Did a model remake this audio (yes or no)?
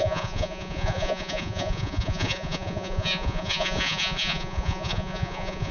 yes